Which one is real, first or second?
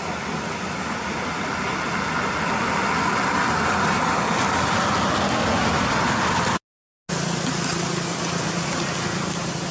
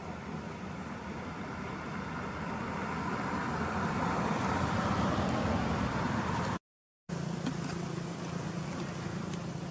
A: first